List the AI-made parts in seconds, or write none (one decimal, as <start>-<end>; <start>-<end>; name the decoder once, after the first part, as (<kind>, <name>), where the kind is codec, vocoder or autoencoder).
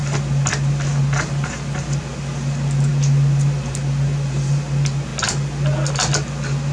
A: none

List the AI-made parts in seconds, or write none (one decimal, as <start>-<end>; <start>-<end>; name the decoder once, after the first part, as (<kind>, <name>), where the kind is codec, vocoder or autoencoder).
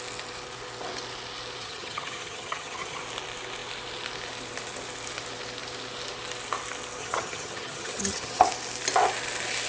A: 1.6-3.0 (vocoder, HiFi-GAN); 7.0-8.5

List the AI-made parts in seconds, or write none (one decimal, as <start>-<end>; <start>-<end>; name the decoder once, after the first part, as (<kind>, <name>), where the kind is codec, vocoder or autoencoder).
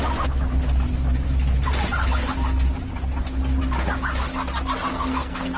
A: 4.9-5.6 (codec, SNAC)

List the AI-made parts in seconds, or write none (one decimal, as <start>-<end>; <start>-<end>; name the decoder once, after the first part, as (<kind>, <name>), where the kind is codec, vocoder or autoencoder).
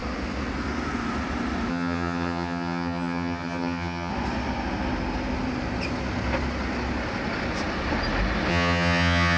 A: 1.7-4.1 (vocoder, HiFi-GAN); 8.5-9.4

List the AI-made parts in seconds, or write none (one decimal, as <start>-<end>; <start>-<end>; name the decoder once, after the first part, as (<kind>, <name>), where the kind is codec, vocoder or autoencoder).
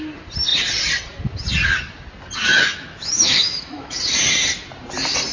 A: 2.5-4.0 (autoencoder, DAC-VAE)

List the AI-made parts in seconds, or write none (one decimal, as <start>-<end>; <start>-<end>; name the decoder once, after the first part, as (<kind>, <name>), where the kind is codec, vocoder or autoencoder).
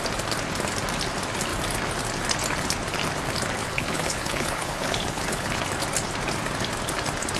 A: 3.6-5.6 (codec, HILCodec)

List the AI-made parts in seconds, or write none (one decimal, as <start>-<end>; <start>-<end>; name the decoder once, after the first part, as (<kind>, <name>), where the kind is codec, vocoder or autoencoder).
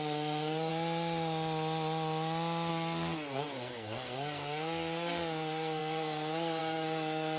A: 0.0-0.7 (codec, SNAC); 2.7-7.4